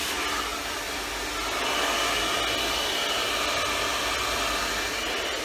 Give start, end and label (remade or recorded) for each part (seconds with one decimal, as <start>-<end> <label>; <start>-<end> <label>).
0.0-5.4 recorded